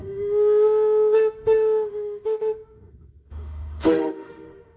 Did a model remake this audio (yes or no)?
yes